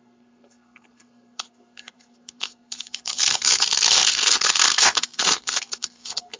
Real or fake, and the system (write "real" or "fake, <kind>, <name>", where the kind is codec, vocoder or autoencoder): fake, codec, SNAC